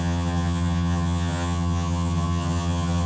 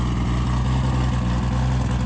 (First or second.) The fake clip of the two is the first